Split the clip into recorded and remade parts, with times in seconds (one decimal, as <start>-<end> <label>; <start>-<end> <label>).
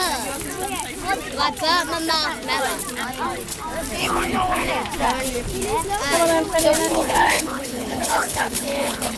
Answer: 0.0-4.0 recorded; 4.0-4.7 remade; 4.7-6.9 recorded; 6.9-9.2 remade